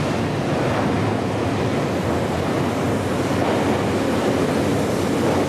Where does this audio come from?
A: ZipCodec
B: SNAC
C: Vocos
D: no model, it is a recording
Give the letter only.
D